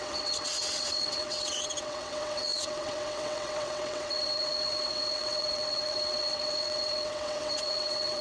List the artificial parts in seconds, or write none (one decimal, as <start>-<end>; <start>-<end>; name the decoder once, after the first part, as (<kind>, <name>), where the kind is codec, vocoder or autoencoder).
0.0-8.2 (vocoder, WaveNeXt)